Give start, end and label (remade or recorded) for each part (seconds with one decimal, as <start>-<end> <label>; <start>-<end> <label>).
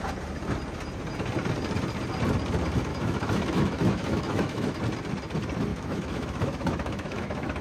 0.0-2.9 recorded; 2.9-4.8 remade; 4.8-5.7 recorded; 5.7-7.6 remade